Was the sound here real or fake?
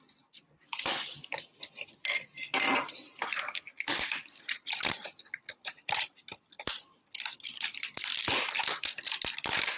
fake